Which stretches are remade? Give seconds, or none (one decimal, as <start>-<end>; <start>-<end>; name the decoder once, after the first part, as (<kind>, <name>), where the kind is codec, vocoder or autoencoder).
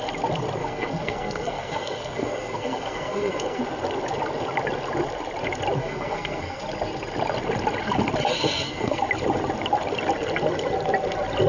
0.6-3.6 (codec, SNAC); 5.8-6.6; 8.3-9.0